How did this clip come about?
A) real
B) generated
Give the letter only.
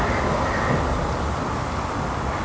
A